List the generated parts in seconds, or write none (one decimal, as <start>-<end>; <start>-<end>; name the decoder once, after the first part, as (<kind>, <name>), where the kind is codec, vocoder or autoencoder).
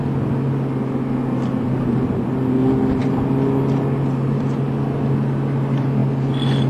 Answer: none